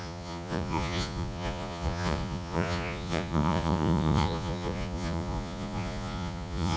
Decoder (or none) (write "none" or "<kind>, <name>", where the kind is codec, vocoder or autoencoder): vocoder, Vocos